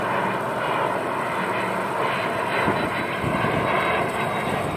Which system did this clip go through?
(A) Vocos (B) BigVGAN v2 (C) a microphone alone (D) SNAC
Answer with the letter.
C